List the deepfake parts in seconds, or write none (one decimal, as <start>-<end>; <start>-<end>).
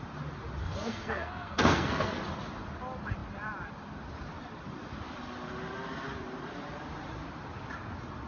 0.6-2.2